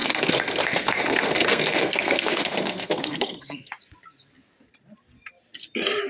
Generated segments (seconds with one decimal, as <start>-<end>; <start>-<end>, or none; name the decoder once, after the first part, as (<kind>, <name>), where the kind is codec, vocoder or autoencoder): 0.0-3.7 (codec, SNAC)